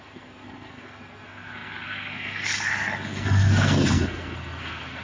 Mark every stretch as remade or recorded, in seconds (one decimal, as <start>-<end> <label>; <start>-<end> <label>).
0.0-5.0 remade